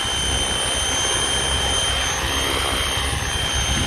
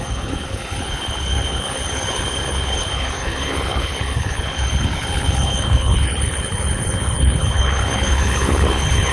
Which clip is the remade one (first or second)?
second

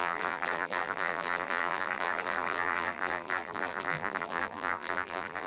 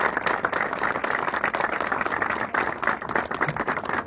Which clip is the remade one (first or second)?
first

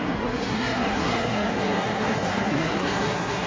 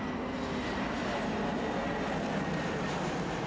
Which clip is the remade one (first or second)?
first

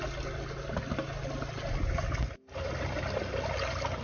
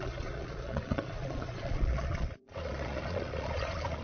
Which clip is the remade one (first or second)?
second